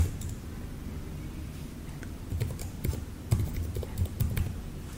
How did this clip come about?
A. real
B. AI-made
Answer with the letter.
A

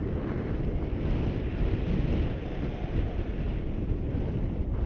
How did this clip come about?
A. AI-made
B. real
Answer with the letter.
B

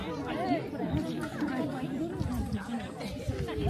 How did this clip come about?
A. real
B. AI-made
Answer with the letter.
A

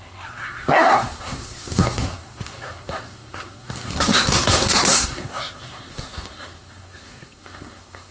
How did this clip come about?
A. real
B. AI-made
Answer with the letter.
B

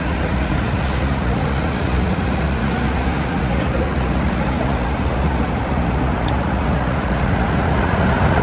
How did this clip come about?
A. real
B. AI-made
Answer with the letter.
B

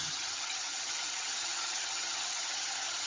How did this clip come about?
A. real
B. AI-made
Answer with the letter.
B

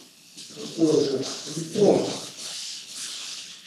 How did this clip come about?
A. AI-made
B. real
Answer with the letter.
A